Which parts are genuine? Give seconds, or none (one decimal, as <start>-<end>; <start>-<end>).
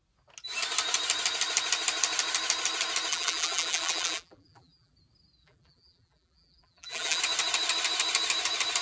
0.0-3.1; 4.9-5.4; 7.2-8.8